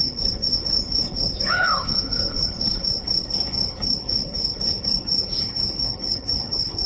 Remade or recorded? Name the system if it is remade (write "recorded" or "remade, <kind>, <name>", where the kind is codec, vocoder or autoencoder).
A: remade, codec, HILCodec